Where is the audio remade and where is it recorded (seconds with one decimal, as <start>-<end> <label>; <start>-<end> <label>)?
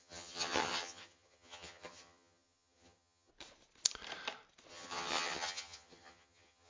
0.0-3.3 remade; 3.3-4.7 recorded; 4.7-6.7 remade